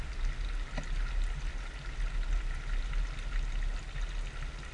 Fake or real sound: real